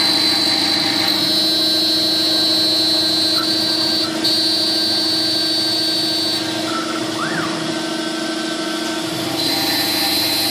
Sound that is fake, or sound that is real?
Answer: real